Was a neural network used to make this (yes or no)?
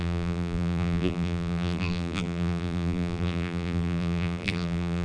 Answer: yes